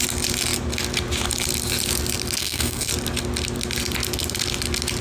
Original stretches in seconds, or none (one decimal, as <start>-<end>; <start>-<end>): 0.0-2.4; 2.9-5.0